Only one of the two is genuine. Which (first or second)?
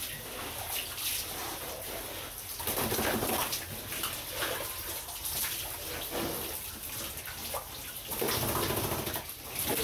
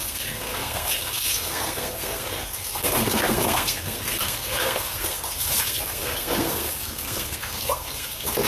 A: first